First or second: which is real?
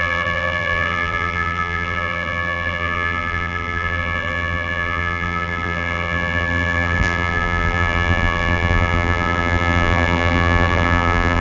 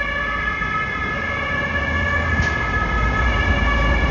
second